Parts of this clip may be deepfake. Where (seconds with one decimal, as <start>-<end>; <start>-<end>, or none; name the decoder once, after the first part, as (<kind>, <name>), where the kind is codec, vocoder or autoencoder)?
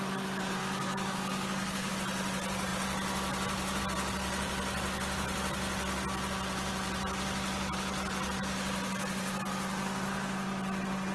0.6-1.9 (codec, DAC)